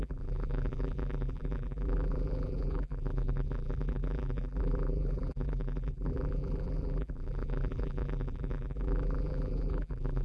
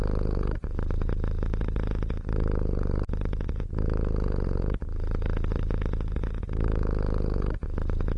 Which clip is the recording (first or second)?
second